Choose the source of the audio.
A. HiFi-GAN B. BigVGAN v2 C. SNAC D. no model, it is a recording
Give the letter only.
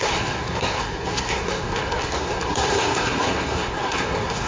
C